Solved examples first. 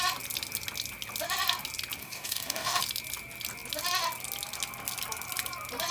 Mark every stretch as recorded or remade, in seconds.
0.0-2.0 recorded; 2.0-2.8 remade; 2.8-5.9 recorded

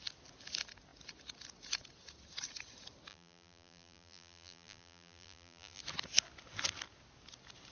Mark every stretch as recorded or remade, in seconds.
0.0-3.1 recorded; 3.1-5.8 remade; 5.8-7.7 recorded

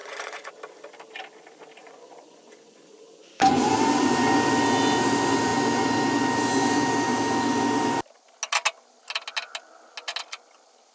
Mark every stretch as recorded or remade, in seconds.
0.0-0.5 remade; 0.5-1.8 recorded; 1.8-3.7 remade; 3.7-10.9 recorded

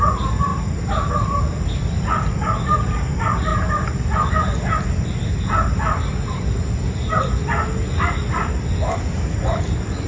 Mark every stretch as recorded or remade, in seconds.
0.0-10.1 recorded

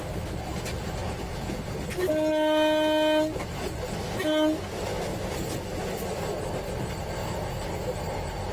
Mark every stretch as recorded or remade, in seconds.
0.0-1.0 recorded; 1.0-2.1 remade; 2.1-5.1 recorded; 5.1-6.5 remade; 6.5-8.5 recorded

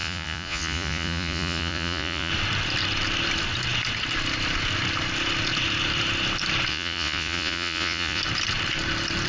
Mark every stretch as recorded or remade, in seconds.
0.0-2.3 remade; 2.3-6.7 recorded; 6.7-8.2 remade; 8.2-9.3 recorded

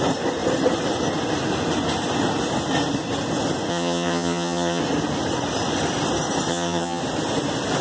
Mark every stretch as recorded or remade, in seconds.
0.0-3.7 recorded; 3.7-4.8 remade; 4.8-6.5 recorded; 6.5-7.0 remade; 7.0-7.8 recorded